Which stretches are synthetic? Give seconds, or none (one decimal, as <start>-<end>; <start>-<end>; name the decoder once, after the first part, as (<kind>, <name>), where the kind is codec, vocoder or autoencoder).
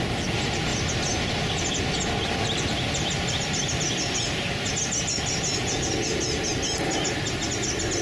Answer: none